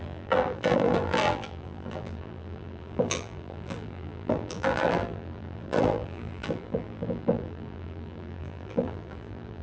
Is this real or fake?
fake